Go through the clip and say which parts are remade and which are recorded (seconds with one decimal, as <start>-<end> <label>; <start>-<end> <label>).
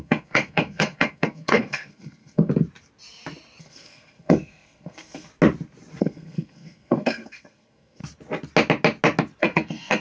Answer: 0.0-2.5 remade; 2.5-3.6 recorded; 3.6-5.3 remade; 5.3-6.0 recorded; 6.0-8.0 remade; 8.0-9.4 recorded; 9.4-10.0 remade